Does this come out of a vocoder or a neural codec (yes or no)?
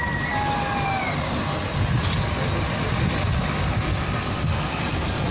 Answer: no